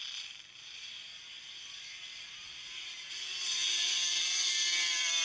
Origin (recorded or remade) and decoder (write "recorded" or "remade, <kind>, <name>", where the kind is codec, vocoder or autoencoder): remade, vocoder, BigVGAN v2